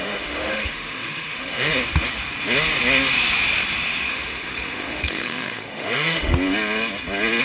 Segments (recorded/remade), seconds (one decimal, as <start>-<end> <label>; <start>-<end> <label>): 0.0-1.7 remade; 1.7-4.1 recorded; 4.1-6.3 remade; 6.3-7.4 recorded